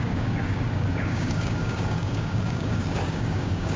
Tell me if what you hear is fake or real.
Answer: fake